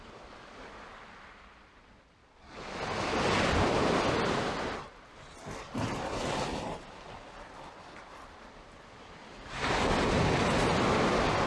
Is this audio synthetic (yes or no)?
no